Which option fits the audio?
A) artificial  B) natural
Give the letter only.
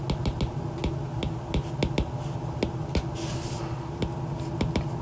B